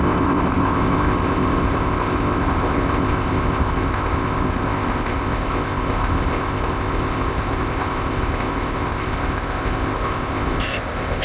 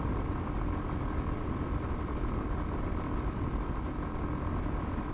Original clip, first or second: second